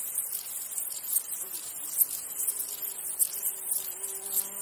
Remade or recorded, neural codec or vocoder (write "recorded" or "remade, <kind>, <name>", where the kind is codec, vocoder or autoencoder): recorded